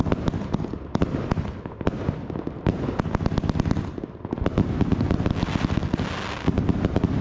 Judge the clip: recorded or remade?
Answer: recorded